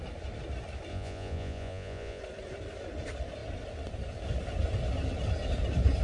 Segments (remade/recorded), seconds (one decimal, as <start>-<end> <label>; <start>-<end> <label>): 0.0-0.9 recorded; 0.9-2.2 remade; 2.2-6.0 recorded